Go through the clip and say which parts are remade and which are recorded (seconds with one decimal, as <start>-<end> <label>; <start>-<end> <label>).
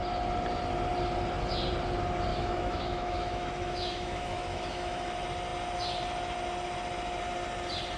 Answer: 0.0-2.3 recorded; 2.3-5.1 remade; 5.1-8.0 recorded